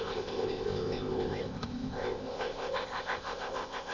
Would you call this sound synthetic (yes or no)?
yes